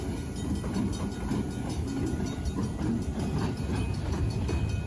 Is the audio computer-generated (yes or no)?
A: no